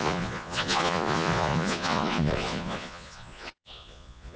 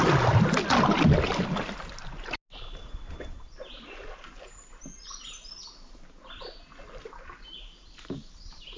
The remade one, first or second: first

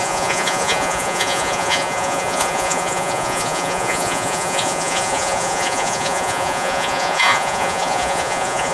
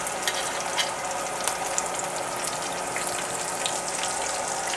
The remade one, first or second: first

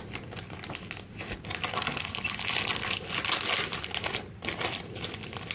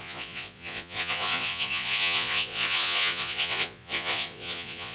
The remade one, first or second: second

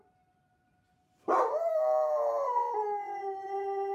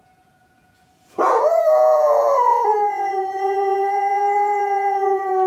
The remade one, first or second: second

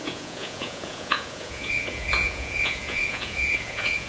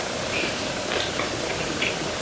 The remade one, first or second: first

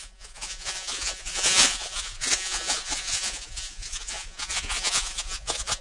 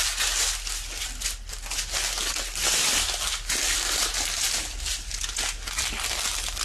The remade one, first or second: first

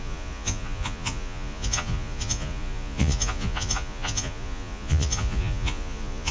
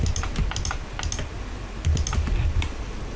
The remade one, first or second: first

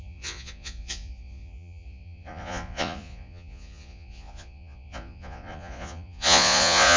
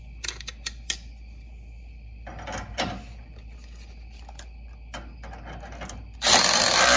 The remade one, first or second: first